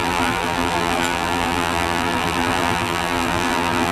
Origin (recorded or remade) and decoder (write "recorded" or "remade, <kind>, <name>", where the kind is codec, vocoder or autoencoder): remade, vocoder, BigVGAN v2